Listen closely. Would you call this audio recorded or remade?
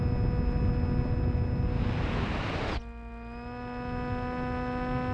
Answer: recorded